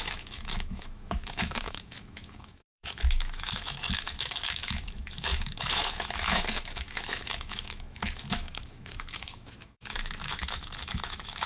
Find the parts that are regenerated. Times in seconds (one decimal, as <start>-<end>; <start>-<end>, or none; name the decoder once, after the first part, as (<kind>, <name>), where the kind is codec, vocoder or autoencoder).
0.0-11.5 (autoencoder, DAC-VAE)